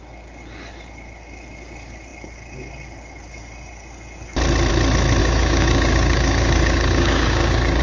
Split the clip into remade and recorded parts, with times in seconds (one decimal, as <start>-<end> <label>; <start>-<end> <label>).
0.0-5.2 recorded; 5.2-7.8 remade